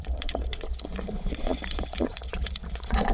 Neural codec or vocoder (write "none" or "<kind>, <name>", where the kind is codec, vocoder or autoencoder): vocoder, Vocos